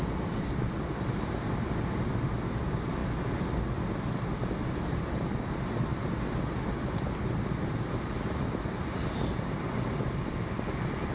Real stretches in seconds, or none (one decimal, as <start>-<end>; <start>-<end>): 0.0-11.1